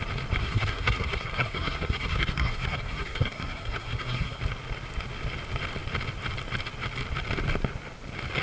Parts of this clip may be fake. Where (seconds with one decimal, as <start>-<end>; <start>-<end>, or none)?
0.4-4.4